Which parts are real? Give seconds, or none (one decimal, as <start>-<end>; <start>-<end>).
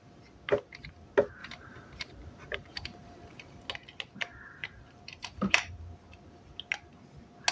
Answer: 0.0-1.4; 3.7-4.6; 5.8-7.5